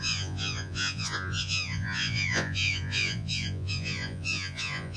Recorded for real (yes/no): no